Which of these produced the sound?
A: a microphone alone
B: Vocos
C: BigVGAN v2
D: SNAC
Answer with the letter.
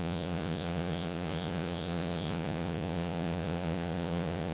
B